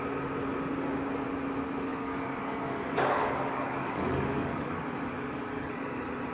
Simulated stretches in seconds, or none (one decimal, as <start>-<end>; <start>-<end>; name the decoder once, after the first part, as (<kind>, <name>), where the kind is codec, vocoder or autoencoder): 1.9-5.7 (codec, DAC)